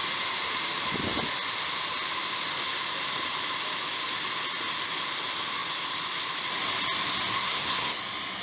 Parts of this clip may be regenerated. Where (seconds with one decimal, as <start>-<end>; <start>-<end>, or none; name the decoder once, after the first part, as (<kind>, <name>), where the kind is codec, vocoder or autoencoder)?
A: 7.3-8.0 (codec, SNAC)